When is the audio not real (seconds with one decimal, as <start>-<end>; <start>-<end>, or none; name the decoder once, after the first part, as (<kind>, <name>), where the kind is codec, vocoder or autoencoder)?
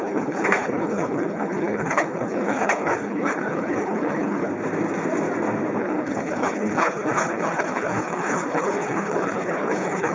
0.0-4.5 (codec, HILCodec); 5.8-10.1